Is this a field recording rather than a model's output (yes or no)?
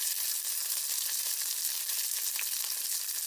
yes